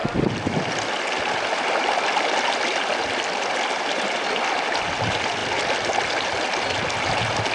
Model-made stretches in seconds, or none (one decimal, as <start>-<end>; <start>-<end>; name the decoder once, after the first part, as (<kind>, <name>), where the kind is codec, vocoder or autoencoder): none